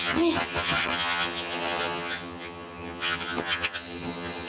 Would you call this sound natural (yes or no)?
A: no